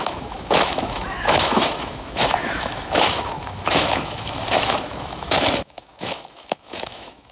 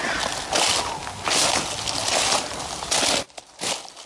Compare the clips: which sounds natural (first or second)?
second